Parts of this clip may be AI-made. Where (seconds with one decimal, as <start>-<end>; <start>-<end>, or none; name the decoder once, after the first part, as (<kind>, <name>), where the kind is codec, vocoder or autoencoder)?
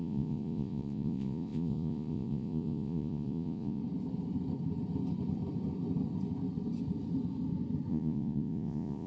0.0-3.8 (vocoder, Vocos); 7.9-9.1